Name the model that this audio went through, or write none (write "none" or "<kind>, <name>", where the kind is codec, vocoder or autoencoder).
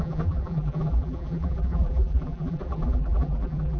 vocoder, BigVGAN v2